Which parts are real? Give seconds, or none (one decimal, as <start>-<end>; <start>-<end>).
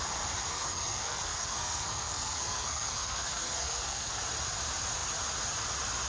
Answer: 0.0-0.5; 4.2-6.1